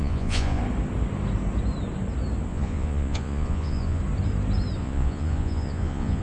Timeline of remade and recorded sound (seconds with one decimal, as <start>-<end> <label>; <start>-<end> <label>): 0.0-0.6 remade; 0.6-2.5 recorded; 2.5-4.0 remade; 4.0-4.8 recorded; 4.8-6.2 remade